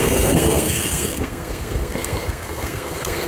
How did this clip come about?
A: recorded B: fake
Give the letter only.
B